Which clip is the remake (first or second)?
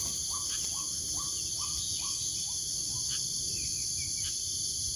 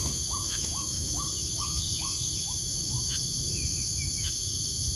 second